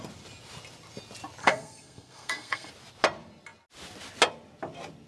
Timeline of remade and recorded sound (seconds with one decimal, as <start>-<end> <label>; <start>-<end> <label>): 0.0-1.4 recorded; 1.4-2.7 remade; 2.7-5.1 recorded